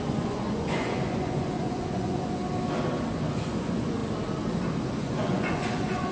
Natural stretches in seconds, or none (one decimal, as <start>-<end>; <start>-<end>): 2.4-3.3; 4.0-5.0